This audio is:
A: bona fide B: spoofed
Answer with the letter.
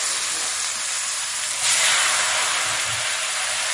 A